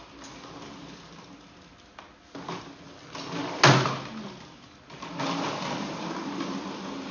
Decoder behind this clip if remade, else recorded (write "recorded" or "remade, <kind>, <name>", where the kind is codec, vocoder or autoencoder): recorded